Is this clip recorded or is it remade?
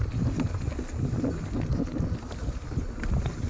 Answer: recorded